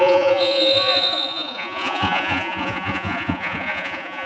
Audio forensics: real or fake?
fake